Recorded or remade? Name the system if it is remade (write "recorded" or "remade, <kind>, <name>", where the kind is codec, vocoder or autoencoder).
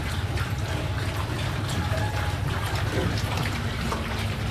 recorded